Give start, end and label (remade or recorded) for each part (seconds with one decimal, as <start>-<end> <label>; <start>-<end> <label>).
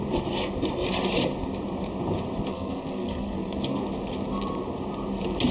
0.0-2.5 recorded; 2.5-3.8 remade; 3.8-5.5 recorded